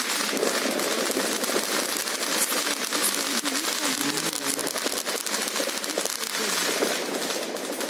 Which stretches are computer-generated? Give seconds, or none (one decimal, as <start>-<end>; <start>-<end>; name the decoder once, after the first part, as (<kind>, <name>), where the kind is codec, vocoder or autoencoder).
none